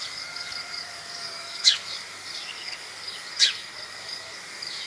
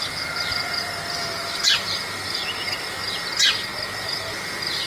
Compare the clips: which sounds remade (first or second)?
first